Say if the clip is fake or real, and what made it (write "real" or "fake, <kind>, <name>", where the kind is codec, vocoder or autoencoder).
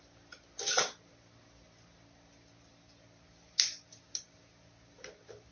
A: real